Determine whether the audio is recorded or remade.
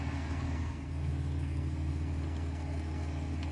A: remade